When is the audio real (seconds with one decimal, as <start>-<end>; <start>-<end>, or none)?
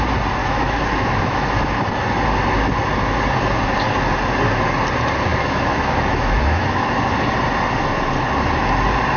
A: 0.0-0.4; 1.9-5.3; 7.0-9.2